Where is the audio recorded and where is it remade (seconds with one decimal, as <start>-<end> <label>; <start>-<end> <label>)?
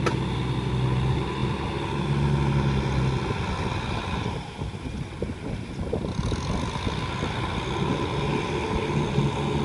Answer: 0.0-9.6 recorded